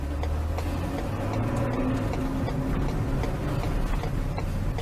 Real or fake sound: real